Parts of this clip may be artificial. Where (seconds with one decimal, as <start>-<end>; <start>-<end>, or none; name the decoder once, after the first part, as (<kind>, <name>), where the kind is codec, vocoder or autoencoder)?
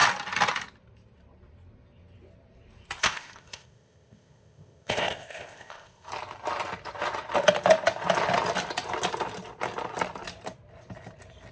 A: 3.0-6.1 (codec, ZipCodec)